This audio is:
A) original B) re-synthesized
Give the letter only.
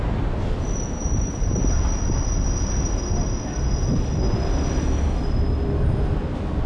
A